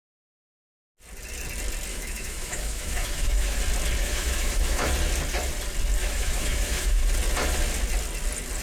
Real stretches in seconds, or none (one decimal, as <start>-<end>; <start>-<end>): 0.0-1.9; 3.6-4.0; 4.9-6.0; 7.0-8.6